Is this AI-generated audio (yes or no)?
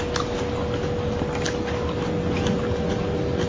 no